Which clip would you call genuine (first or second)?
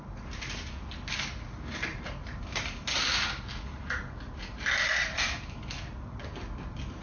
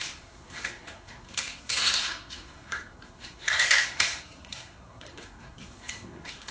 first